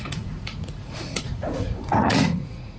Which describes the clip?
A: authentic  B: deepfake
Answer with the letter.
B